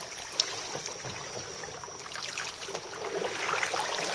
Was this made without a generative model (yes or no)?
yes